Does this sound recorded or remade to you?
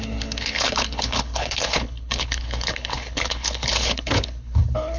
remade